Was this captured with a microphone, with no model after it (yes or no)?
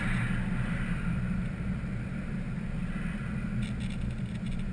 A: yes